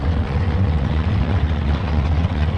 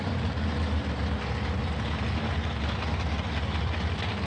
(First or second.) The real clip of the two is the second